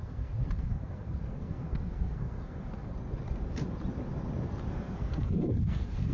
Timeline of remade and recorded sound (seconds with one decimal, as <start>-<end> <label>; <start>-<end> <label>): 0.0-2.9 remade; 2.9-4.7 recorded; 4.7-6.1 remade